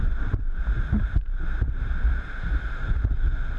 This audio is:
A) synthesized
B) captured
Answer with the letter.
A